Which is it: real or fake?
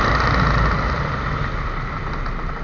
real